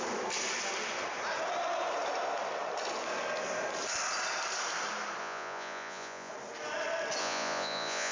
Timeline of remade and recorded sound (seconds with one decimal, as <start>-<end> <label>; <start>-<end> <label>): 0.0-5.2 recorded; 5.2-6.3 remade; 6.3-7.2 recorded; 7.2-8.1 remade